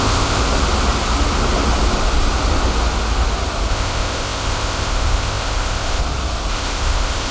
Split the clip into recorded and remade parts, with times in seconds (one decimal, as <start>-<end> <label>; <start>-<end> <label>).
0.0-0.4 remade; 0.4-3.7 recorded; 3.7-6.0 remade; 6.0-6.5 recorded; 6.5-7.3 remade